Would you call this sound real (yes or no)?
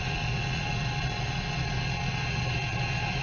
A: no